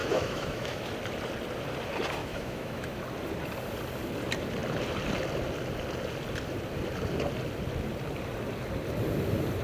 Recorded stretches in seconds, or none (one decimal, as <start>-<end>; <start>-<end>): 0.9-2.2; 3.0-9.6